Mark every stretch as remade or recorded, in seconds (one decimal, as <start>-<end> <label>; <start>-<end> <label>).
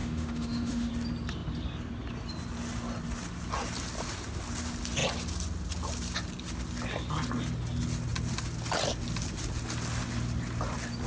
0.0-0.9 remade; 0.9-11.1 recorded